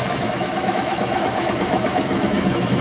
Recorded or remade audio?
remade